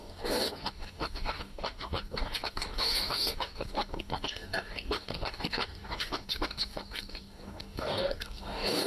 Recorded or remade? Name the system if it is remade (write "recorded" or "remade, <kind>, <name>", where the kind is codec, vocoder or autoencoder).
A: remade, codec, DAC